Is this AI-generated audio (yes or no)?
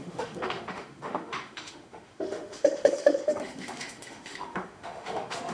yes